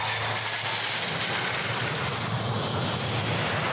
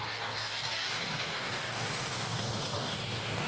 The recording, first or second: first